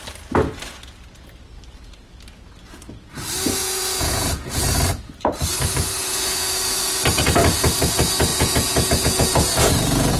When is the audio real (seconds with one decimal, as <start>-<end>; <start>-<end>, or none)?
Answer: 0.0-3.6; 4.6-6.0; 6.6-8.3